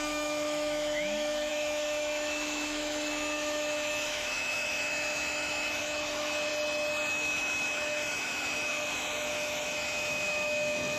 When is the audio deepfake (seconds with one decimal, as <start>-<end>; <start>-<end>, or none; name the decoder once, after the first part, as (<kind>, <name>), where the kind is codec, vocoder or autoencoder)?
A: 0.0-6.5 (autoencoder, DAC-VAE); 7.1-11.0